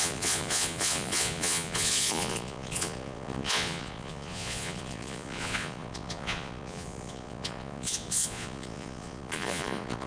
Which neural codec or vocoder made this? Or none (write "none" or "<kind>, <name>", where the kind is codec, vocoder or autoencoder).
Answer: vocoder, Vocos